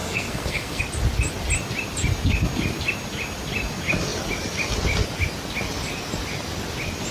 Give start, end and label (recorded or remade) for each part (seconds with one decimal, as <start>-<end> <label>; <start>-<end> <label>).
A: 0.0-0.8 remade; 0.8-7.1 recorded